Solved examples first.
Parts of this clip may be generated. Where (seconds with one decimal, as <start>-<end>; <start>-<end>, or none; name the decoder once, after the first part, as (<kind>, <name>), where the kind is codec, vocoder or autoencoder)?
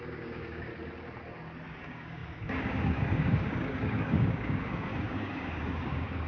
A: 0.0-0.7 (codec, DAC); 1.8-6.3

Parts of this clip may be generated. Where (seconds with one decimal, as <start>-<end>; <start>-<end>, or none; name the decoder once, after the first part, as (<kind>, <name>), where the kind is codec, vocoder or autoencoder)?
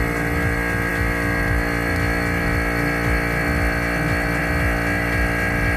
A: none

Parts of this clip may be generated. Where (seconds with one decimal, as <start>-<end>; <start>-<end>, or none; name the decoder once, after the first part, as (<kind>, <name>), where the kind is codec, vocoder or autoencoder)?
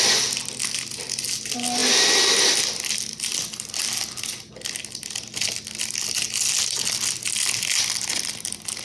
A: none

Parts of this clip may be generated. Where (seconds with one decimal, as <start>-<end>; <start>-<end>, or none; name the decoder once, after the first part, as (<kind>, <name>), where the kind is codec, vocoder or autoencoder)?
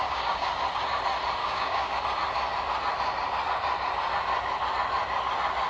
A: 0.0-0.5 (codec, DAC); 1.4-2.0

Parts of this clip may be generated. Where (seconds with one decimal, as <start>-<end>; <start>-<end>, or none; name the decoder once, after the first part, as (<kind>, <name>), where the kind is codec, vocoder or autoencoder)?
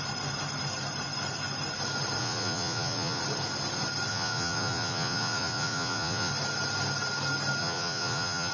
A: 2.2-3.2 (vocoder, Vocos); 4.1-6.3; 7.6-8.5